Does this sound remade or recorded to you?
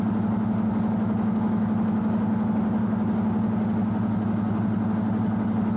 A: recorded